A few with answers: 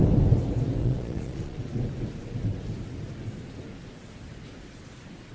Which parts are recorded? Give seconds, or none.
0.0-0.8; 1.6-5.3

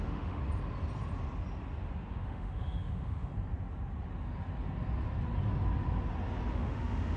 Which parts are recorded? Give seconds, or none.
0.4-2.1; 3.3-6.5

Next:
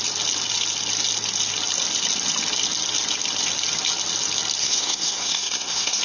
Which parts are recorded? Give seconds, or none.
0.0-4.6

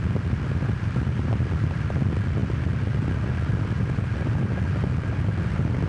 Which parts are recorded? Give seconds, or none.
2.4-3.5